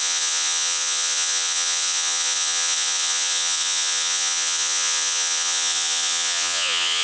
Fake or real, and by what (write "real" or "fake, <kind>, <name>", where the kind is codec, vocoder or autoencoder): fake, vocoder, Vocos